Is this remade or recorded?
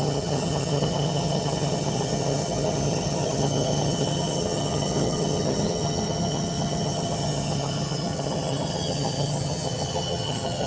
remade